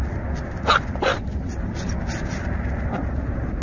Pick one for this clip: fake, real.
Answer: real